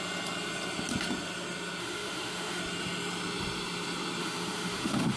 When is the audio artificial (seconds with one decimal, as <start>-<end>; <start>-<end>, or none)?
1.8-2.6; 4.2-5.2